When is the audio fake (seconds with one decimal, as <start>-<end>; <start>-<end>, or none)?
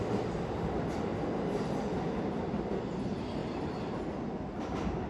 none